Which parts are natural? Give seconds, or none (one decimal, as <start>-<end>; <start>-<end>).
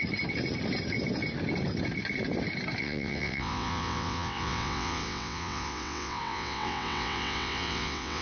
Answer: 0.0-2.8